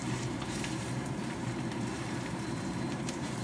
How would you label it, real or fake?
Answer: fake